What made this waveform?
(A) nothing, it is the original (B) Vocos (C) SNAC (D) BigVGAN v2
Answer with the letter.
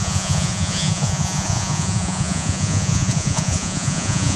B